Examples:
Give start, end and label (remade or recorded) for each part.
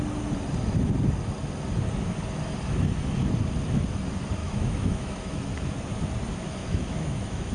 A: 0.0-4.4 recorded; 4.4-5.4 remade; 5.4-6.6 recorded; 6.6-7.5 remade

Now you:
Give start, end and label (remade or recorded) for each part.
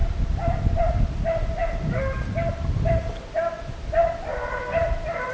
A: 0.0-5.3 recorded